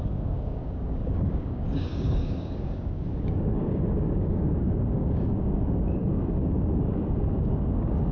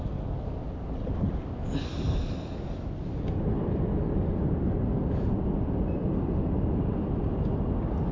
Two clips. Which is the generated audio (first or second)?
first